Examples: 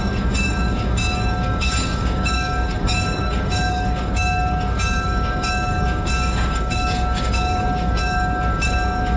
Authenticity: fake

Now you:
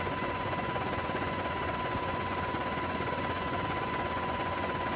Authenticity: fake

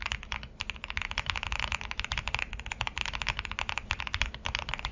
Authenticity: real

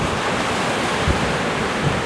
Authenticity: real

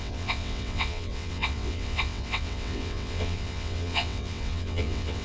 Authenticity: fake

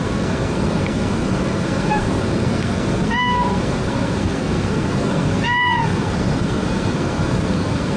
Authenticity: fake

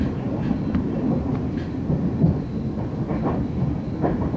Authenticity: real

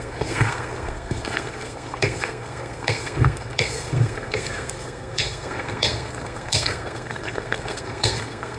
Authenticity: fake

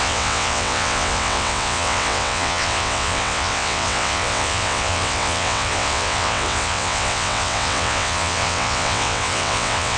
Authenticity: fake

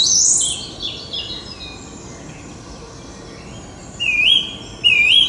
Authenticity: real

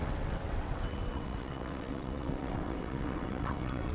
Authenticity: fake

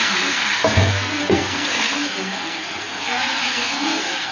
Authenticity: fake